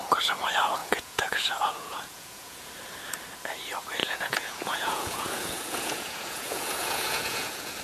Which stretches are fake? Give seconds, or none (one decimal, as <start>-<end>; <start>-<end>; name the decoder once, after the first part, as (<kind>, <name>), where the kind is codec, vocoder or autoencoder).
0.8-2.7 (vocoder, Vocos); 4.0-7.8